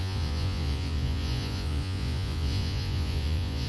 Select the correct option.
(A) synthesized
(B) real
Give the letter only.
A